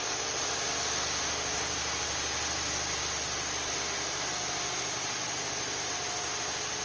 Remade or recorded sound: recorded